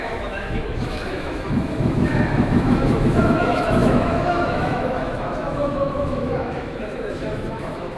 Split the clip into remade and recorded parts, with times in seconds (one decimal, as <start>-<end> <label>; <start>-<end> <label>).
0.0-8.0 remade